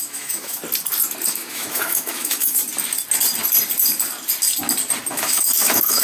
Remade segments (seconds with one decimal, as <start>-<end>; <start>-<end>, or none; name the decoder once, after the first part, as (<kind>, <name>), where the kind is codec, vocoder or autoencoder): 0.0-0.6 (autoencoder, DAC-VAE); 1.3-2.6; 5.1-6.0